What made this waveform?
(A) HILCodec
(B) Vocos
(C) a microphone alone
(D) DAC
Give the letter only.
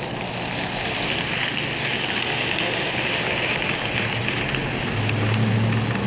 C